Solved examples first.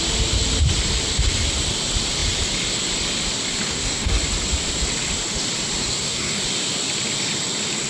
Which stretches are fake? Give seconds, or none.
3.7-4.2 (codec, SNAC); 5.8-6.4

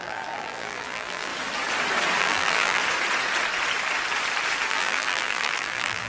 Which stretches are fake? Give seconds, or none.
0.0-1.3 (vocoder, BigVGAN v2); 2.2-2.8; 4.7-6.1

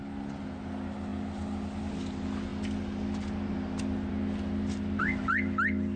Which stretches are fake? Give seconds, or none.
none

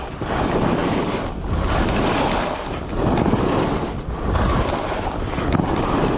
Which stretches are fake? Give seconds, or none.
none

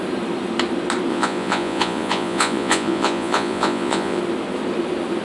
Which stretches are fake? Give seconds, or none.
1.1-4.2 (vocoder, Vocos)

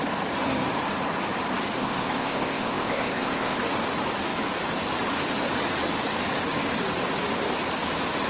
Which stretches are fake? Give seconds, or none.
1.8-3.6 (codec, ZipCodec)

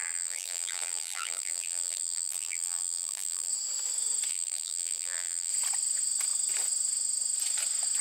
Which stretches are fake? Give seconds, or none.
0.0-3.5 (vocoder, BigVGAN v2); 4.3-5.5